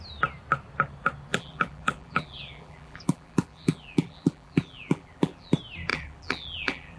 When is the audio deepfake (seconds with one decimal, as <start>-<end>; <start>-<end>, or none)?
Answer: 1.3-5.5; 5.9-7.0